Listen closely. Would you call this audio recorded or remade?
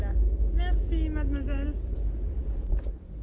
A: recorded